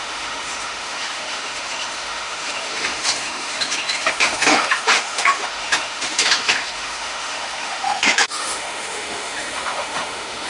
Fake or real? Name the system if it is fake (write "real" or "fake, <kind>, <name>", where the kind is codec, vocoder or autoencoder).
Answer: fake, autoencoder, DAC-VAE